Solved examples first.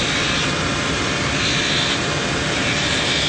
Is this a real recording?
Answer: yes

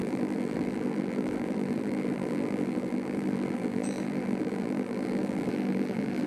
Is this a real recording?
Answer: no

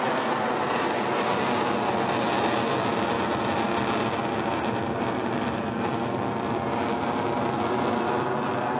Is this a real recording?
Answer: yes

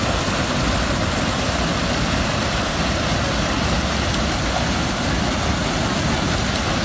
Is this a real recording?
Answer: yes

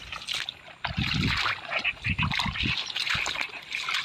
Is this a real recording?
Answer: yes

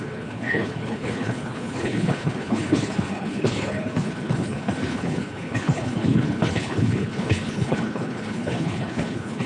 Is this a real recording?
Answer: no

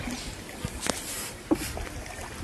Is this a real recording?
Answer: yes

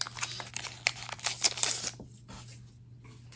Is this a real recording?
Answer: yes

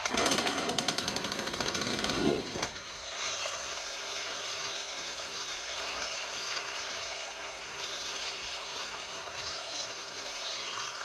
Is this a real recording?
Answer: no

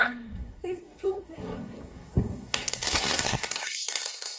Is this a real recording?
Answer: no